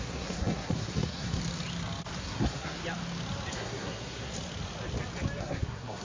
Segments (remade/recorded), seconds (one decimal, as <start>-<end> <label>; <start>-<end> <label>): 0.0-1.4 remade; 1.4-2.2 recorded; 2.2-2.8 remade; 2.8-3.5 recorded; 3.5-4.3 remade; 4.3-5.4 recorded; 5.4-6.0 remade